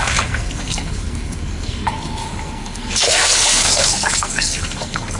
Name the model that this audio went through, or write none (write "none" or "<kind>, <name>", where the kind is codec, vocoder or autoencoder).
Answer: codec, SNAC